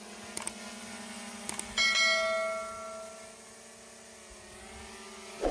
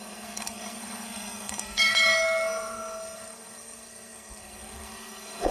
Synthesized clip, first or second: second